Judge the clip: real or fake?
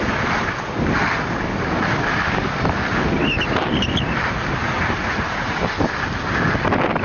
real